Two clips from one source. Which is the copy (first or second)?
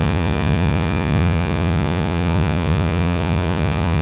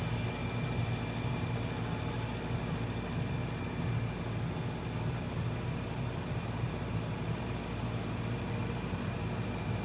first